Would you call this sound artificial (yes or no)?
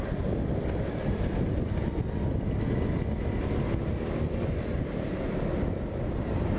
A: no